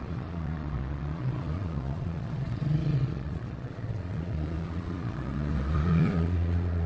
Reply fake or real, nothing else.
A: fake